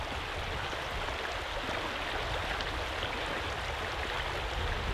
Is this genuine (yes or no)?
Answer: yes